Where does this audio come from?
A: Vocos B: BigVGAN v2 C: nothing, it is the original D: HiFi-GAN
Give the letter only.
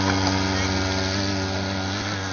C